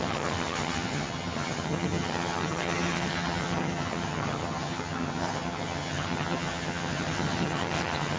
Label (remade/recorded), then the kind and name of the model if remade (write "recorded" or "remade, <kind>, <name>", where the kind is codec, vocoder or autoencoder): remade, vocoder, HiFi-GAN